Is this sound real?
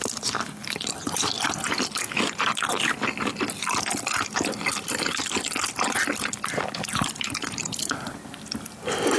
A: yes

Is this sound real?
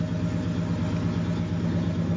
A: yes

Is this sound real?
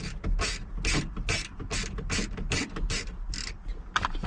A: yes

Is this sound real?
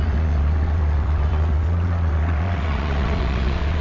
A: no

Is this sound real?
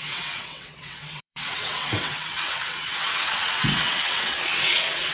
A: no